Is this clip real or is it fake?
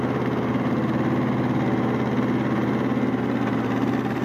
real